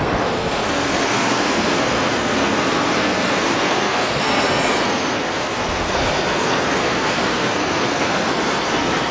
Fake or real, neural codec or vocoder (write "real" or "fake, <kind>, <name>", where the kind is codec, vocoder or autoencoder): fake, codec, SNAC